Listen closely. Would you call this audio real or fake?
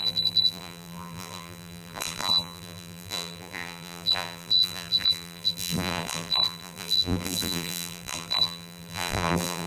fake